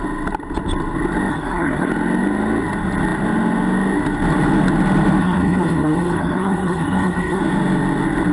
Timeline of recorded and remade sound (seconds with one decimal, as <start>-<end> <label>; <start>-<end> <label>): 0.0-1.3 recorded; 1.3-1.9 remade; 1.9-5.2 recorded; 5.2-7.4 remade; 7.4-8.3 recorded